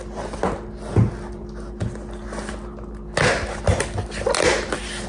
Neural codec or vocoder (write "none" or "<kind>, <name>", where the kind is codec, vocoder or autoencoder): none